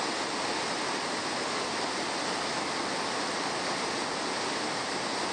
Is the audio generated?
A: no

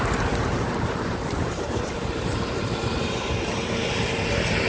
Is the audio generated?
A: yes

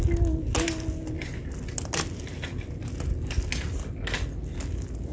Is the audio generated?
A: no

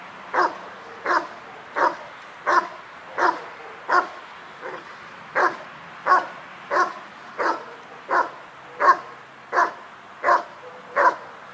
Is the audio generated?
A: no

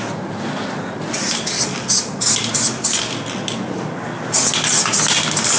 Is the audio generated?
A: no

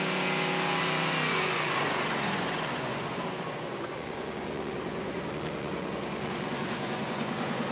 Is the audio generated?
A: yes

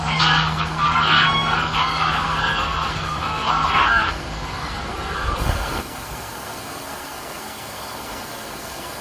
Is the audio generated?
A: yes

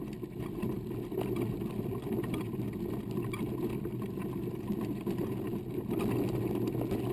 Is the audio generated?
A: no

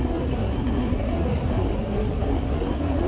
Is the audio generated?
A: yes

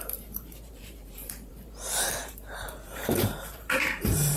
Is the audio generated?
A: yes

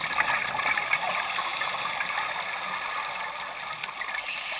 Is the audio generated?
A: no